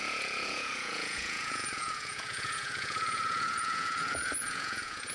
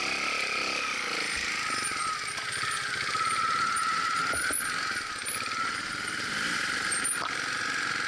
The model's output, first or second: first